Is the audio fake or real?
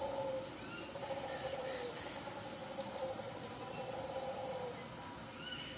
real